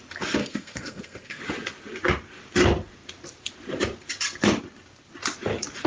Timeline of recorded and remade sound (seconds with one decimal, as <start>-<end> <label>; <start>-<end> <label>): 0.0-0.4 recorded; 0.4-1.4 remade; 1.4-5.9 recorded